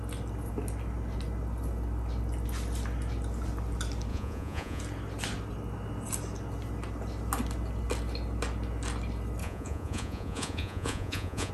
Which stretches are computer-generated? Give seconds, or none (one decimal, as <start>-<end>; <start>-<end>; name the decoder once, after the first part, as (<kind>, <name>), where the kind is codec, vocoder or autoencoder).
4.1-4.8 (vocoder, Vocos); 9.4-11.5

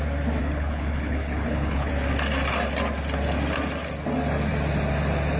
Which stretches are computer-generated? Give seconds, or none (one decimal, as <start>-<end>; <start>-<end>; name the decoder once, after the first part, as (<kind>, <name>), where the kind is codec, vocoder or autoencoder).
0.4-1.9 (codec, HILCodec)

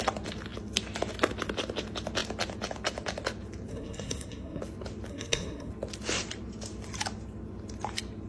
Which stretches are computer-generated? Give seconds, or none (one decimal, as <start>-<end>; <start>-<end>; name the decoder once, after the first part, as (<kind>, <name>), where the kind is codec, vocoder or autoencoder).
3.7-4.6 (codec, SNAC); 5.1-5.7

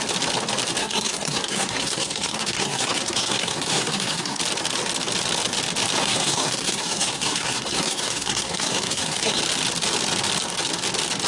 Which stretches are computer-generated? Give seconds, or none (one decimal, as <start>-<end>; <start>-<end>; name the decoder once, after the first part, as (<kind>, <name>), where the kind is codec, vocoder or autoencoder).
0.8-4.4 (codec, SNAC); 6.0-9.4